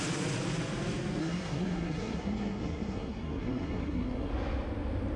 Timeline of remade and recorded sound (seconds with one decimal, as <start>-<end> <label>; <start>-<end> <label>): 0.0-1.2 recorded; 1.2-4.3 remade; 4.3-5.2 recorded